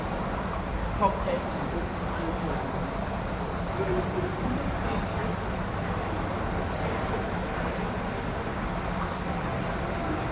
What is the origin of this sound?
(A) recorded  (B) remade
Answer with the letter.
A